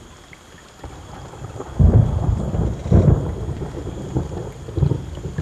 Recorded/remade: recorded